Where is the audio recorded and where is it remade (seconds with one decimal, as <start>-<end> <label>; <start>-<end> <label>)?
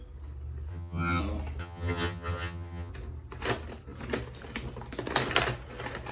0.0-0.7 recorded; 0.7-1.2 remade; 1.2-1.6 recorded; 1.6-2.9 remade; 2.9-6.1 recorded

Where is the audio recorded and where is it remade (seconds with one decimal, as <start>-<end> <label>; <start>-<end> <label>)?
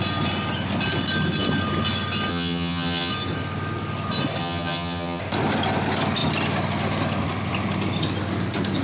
0.0-2.3 recorded; 2.3-3.1 remade; 3.1-4.4 recorded; 4.4-5.2 remade; 5.2-8.8 recorded